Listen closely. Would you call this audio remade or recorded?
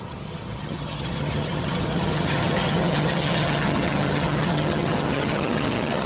remade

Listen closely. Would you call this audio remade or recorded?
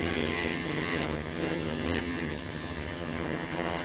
remade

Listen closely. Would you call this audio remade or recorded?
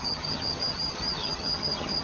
remade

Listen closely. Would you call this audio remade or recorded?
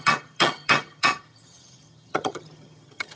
remade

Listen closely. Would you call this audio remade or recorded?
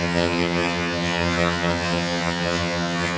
remade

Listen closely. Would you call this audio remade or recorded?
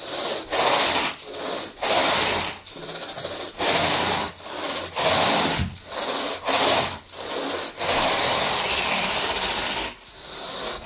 recorded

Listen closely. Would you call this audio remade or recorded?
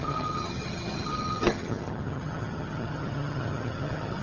remade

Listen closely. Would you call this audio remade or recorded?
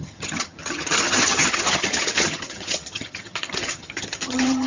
remade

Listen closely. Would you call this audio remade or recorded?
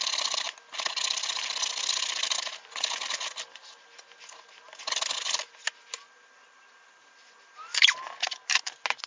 recorded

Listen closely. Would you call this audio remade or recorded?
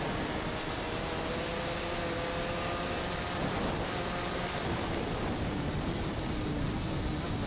recorded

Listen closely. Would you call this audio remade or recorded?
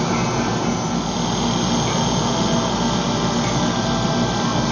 recorded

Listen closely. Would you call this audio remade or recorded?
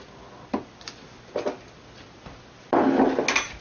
recorded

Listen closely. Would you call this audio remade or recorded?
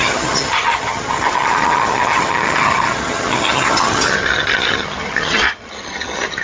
remade